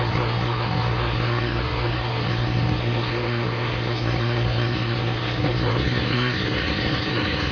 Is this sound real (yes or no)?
no